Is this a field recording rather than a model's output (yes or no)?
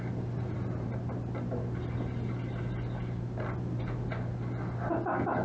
yes